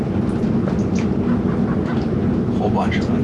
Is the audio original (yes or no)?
yes